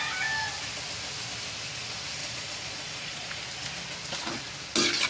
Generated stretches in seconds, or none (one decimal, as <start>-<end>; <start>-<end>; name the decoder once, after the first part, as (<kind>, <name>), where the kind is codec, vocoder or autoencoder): 2.2-3.4 (vocoder, Vocos)